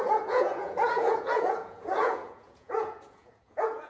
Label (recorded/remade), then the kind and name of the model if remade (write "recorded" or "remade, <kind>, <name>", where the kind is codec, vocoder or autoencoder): remade, vocoder, Vocos